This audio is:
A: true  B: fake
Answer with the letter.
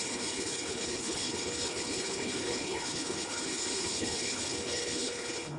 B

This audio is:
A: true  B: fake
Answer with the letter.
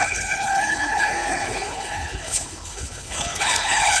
B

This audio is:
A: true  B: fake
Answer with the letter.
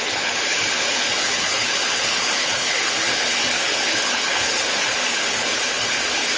B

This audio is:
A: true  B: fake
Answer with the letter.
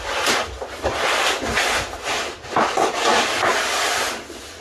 A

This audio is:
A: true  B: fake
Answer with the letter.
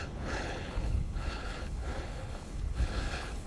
B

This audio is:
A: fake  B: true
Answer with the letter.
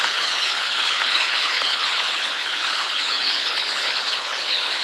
A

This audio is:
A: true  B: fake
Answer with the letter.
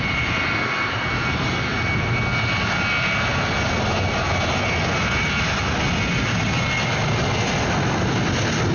A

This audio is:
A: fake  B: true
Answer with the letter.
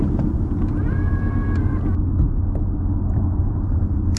B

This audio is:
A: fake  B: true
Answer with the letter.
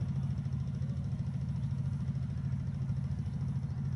B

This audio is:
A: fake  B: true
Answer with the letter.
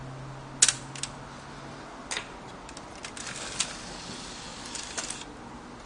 B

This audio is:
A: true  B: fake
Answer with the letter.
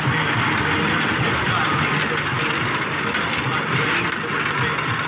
A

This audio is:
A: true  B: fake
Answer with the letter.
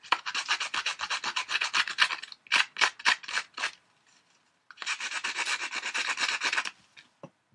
A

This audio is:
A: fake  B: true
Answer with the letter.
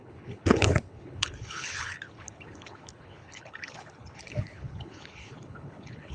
A